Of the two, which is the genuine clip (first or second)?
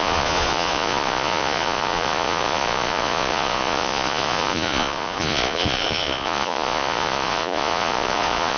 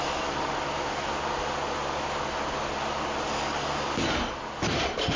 second